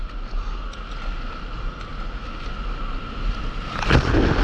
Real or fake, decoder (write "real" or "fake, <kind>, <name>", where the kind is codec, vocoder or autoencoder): real